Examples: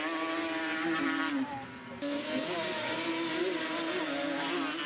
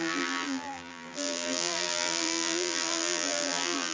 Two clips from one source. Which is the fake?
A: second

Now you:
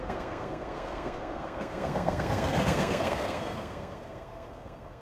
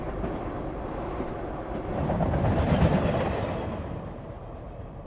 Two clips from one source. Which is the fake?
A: first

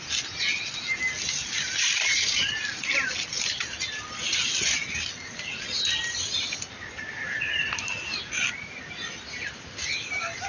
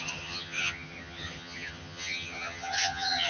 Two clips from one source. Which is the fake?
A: second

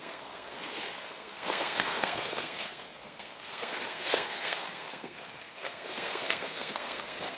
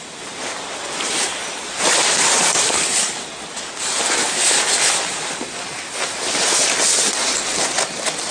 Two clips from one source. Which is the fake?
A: first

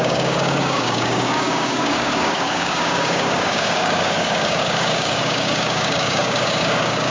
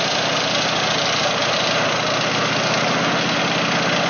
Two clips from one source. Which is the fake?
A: first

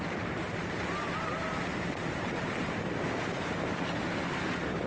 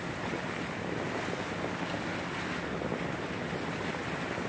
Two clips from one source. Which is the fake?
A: first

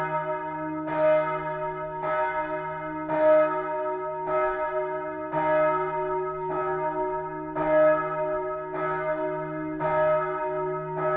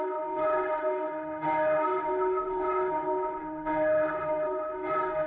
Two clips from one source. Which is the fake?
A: second